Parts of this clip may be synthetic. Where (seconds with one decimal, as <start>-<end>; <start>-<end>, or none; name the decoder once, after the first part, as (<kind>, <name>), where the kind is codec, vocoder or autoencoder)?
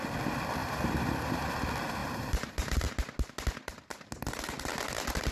0.6-1.4 (vocoder, BigVGAN v2); 2.0-2.9